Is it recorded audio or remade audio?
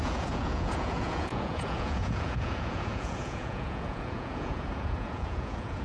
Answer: remade